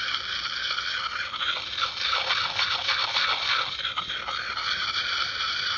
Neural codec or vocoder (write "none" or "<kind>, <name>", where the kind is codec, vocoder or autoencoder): none